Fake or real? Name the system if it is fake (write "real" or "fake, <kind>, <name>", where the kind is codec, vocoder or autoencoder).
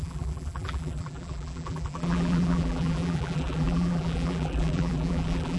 fake, vocoder, BigVGAN v2